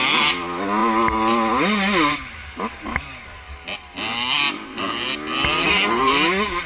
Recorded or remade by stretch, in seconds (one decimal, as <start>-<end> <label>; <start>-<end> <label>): 0.0-5.6 recorded; 5.6-6.1 remade; 6.1-6.7 recorded